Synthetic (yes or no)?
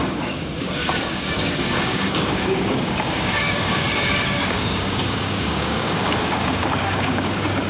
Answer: yes